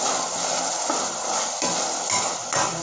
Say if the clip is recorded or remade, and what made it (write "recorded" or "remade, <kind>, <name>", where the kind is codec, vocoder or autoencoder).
recorded